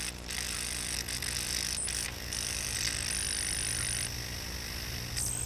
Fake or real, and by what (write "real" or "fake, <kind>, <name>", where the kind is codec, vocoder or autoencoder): real